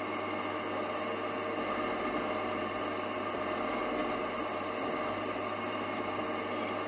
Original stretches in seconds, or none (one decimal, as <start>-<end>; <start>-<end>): 0.0-4.0; 6.2-6.9